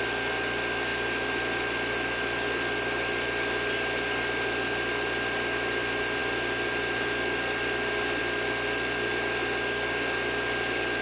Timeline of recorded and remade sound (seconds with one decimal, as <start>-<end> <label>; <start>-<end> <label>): 0.0-11.0 recorded